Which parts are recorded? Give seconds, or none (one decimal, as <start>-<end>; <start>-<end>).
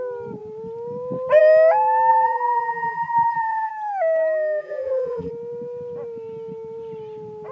0.0-2.1; 3.7-4.6; 5.3-7.5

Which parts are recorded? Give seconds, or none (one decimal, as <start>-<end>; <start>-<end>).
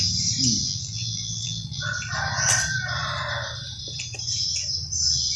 0.0-0.6; 1.9-5.4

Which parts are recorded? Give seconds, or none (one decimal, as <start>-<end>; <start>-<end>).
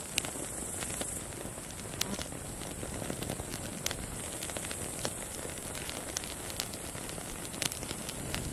0.0-3.5; 4.2-8.5